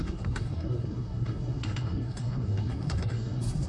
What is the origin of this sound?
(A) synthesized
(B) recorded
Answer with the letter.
A